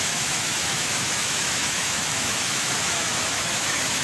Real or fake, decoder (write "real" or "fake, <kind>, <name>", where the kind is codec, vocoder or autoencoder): fake, autoencoder, DAC-VAE